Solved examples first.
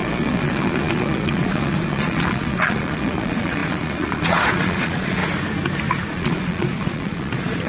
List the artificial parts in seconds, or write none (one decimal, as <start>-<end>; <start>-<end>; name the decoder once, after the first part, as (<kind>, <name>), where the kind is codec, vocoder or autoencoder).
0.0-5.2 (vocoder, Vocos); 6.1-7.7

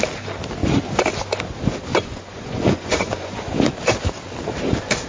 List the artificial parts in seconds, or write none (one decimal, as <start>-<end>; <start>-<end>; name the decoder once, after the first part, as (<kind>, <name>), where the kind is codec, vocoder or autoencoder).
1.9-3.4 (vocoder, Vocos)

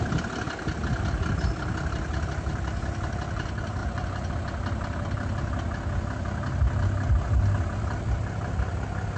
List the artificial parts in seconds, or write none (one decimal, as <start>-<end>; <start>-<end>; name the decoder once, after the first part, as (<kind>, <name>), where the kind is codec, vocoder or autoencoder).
3.8-4.3 (vocoder, Vocos)